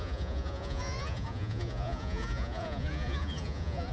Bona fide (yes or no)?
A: no